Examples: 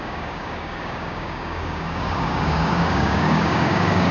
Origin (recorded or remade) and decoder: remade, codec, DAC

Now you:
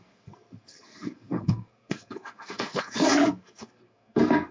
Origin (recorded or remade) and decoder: remade, codec, SNAC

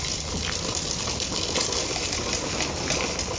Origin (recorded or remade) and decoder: recorded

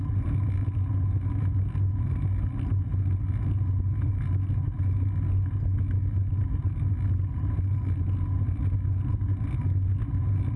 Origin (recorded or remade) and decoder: recorded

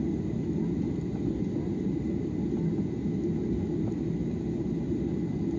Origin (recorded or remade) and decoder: recorded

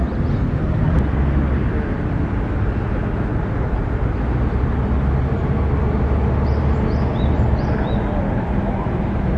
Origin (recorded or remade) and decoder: recorded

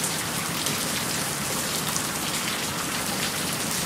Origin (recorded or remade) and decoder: recorded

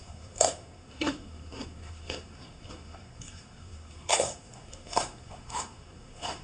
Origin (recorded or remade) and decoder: remade, codec, SNAC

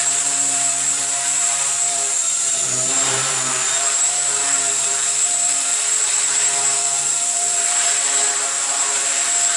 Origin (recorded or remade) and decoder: remade, vocoder, BigVGAN v2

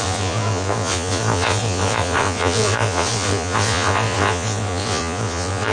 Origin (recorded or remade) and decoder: remade, vocoder, Vocos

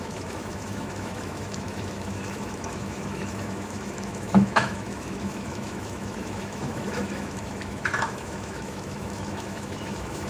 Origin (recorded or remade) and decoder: remade, autoencoder, DAC-VAE